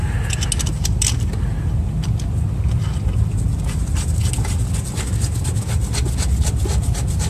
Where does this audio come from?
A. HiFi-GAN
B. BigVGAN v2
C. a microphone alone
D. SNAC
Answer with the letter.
C